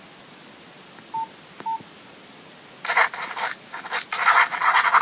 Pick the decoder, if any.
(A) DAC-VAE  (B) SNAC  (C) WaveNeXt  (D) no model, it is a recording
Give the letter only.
D